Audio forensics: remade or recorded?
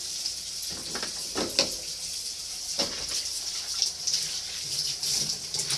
recorded